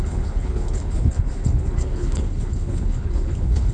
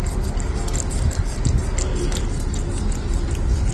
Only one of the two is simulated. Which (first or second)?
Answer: first